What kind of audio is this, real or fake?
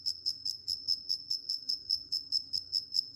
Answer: fake